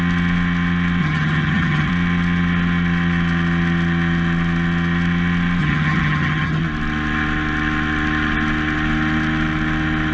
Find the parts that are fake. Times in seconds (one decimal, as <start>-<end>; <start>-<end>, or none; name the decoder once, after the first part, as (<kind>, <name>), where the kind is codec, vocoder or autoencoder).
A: 1.0-1.9 (vocoder, HiFi-GAN); 5.6-6.6